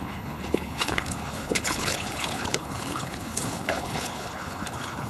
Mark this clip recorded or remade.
remade